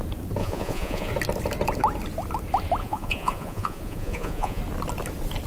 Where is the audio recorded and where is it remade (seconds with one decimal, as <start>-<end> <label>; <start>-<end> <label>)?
0.0-0.4 recorded; 0.4-1.1 remade; 1.1-2.8 recorded; 2.8-4.6 remade; 4.6-5.5 recorded